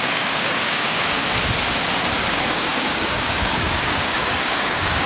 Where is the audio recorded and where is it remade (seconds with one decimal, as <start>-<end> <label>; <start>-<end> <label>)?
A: 0.0-1.2 remade; 1.2-2.2 recorded; 2.2-5.1 remade